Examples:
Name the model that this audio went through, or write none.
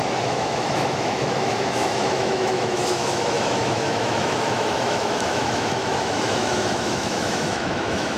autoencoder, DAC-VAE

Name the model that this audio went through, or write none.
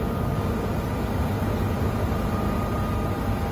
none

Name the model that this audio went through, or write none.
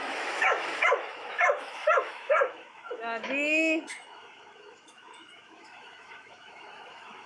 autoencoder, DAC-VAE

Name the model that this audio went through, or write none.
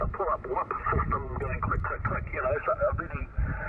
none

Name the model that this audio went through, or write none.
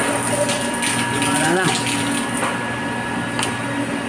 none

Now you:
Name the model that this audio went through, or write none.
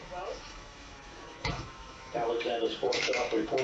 autoencoder, DAC-VAE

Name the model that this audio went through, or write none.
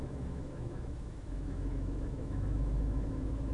autoencoder, DAC-VAE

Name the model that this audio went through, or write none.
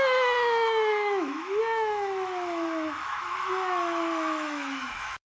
autoencoder, DAC-VAE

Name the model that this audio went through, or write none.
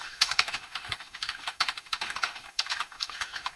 autoencoder, DAC-VAE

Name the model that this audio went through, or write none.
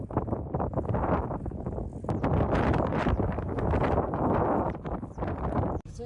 none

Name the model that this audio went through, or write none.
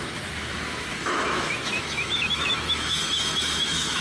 autoencoder, DAC-VAE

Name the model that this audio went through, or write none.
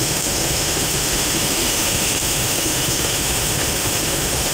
autoencoder, DAC-VAE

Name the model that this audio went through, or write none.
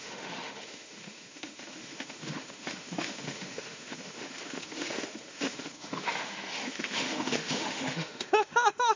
autoencoder, DAC-VAE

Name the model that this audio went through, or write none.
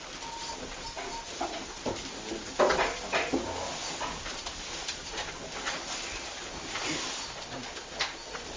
none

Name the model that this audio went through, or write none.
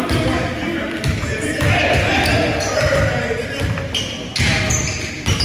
none